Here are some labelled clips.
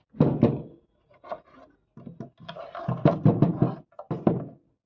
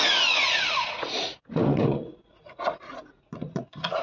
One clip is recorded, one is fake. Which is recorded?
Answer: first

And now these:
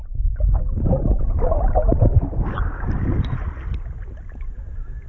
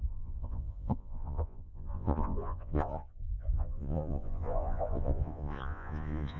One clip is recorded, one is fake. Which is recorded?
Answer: first